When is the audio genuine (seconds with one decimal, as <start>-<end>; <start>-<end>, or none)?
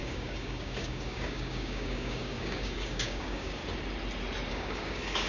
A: 3.6-4.5